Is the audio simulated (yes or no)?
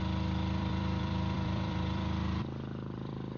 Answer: yes